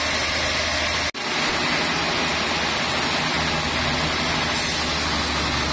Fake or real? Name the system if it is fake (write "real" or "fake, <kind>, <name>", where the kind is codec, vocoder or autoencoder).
real